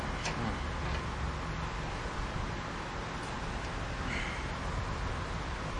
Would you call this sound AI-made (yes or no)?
no